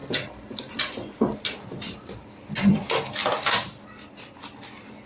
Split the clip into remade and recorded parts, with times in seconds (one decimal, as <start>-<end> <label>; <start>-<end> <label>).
0.0-2.9 remade; 2.9-5.1 recorded